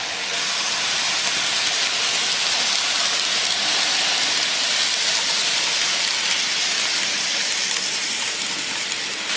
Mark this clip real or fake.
real